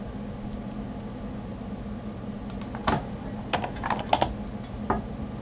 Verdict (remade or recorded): recorded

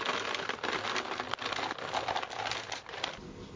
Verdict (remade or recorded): recorded